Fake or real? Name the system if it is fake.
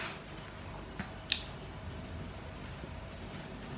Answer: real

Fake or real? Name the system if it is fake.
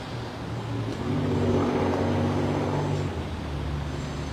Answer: real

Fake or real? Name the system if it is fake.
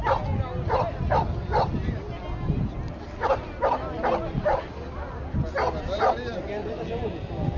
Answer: real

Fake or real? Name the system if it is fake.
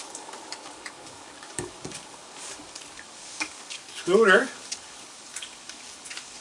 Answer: fake, codec, DAC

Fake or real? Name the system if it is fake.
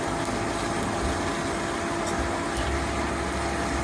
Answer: real